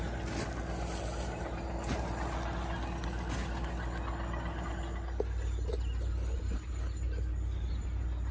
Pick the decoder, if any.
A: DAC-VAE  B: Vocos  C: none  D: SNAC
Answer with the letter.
C